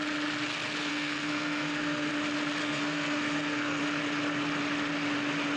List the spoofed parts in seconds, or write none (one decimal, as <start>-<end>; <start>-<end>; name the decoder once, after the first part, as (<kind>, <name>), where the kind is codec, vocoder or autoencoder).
0.9-2.1 (codec, SNAC); 2.6-3.8

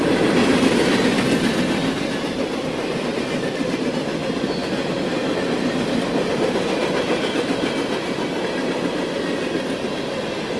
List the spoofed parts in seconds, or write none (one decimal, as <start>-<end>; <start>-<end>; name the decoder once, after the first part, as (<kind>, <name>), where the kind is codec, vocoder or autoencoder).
none

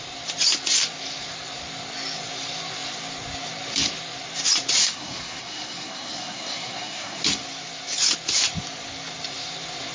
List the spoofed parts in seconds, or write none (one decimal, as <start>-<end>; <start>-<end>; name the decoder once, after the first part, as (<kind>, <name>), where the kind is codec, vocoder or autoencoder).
4.8-7.2 (codec, SNAC)

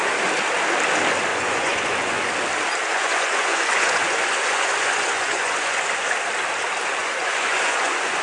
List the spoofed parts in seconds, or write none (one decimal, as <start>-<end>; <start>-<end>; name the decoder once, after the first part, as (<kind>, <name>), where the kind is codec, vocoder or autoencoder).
1.3-2.3 (vocoder, Vocos); 2.8-6.1; 7.0-8.2

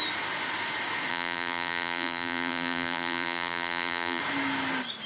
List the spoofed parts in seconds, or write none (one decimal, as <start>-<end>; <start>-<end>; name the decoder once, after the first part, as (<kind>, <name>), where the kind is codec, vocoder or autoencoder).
1.1-4.2 (vocoder, BigVGAN v2)